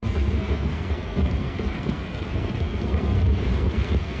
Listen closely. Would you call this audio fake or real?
fake